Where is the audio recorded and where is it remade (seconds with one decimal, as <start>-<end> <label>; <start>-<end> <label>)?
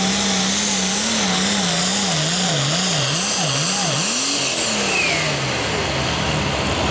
0.0-6.9 recorded